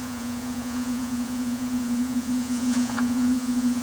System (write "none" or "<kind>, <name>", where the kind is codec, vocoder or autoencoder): vocoder, Vocos